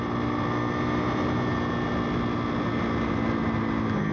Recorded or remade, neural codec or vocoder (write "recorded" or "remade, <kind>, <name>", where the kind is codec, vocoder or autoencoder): recorded